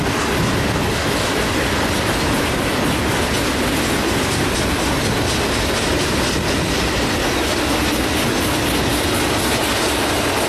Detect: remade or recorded recorded